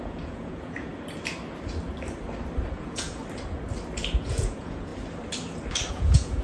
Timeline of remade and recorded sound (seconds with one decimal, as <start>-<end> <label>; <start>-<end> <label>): 0.0-0.9 remade; 0.9-2.7 recorded; 2.7-3.2 remade; 3.2-4.2 recorded; 4.2-4.9 remade; 4.9-5.9 recorded; 5.9-6.4 remade